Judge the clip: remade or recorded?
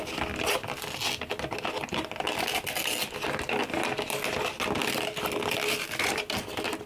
recorded